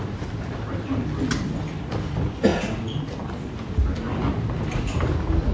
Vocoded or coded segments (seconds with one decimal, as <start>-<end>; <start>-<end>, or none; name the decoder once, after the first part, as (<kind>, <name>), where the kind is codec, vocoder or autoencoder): none